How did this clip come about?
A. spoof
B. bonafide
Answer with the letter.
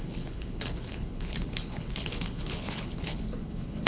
A